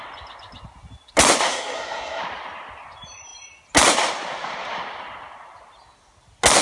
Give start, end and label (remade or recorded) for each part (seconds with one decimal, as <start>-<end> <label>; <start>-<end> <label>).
0.0-1.5 recorded; 1.5-2.2 remade; 2.2-6.6 recorded